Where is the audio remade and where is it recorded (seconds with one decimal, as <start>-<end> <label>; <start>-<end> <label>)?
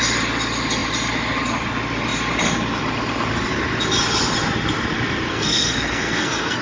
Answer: 0.0-5.3 recorded; 5.3-6.6 remade